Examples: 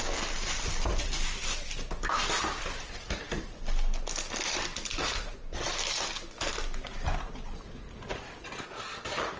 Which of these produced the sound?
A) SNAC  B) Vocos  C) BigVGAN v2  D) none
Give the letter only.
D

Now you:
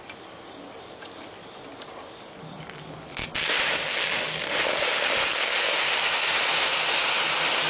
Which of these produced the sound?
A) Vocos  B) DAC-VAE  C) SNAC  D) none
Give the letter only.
D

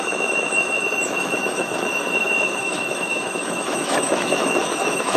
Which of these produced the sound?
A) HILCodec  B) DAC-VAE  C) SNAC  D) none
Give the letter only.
B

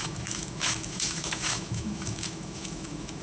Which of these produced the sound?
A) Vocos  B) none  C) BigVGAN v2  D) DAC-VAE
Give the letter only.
D